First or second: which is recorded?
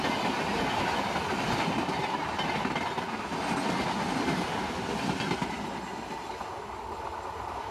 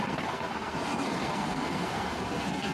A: first